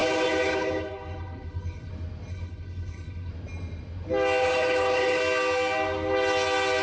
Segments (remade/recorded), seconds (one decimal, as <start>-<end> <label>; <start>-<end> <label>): 0.0-1.9 remade; 1.9-2.3 recorded; 2.3-3.3 remade; 3.3-4.4 recorded; 4.4-5.2 remade; 5.2-6.8 recorded